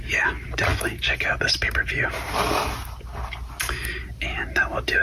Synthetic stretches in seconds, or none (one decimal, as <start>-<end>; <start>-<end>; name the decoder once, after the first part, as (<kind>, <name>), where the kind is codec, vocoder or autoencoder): none